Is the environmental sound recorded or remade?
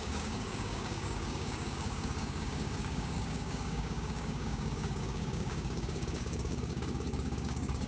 remade